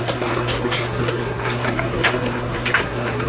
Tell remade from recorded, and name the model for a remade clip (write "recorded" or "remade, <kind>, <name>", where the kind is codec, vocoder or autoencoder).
remade, codec, SNAC